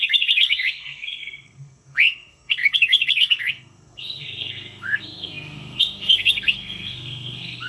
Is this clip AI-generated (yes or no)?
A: yes